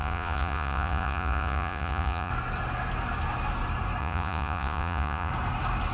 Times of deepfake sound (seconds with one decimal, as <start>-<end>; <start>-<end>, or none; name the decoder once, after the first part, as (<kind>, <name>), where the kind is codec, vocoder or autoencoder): 0.0-2.3 (vocoder, Vocos); 4.0-5.3